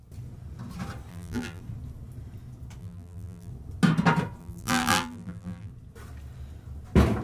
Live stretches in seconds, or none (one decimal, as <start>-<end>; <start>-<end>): 0.0-1.1; 1.6-2.8; 3.5-4.4; 5.7-7.2

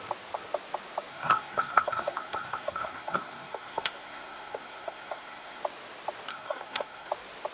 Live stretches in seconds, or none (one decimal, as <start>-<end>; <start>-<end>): 0.0-1.1; 5.6-6.3; 7.1-7.5

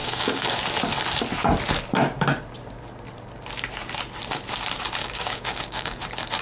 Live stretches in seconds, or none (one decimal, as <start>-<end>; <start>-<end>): 0.6-5.0; 6.0-6.4

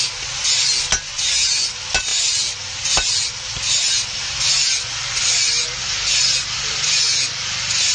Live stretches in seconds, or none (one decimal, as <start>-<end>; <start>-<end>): 0.0-7.9

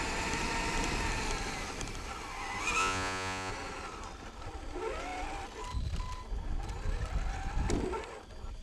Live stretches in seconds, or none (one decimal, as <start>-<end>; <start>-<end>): 0.0-2.8; 3.5-8.6

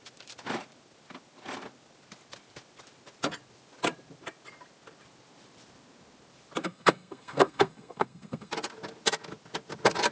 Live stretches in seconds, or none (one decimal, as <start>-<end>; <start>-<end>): 0.0-6.6; 8.5-10.1